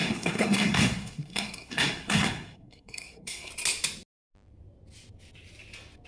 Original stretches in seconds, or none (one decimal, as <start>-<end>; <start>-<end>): 3.5-6.1